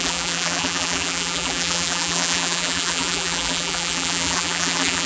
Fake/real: fake